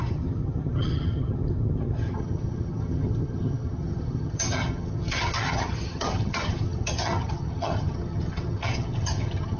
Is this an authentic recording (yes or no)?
no